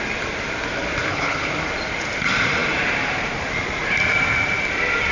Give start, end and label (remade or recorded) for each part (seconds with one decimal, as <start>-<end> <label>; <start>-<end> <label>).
0.0-1.0 recorded; 1.0-1.5 remade; 1.5-5.1 recorded